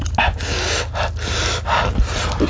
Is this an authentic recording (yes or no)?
yes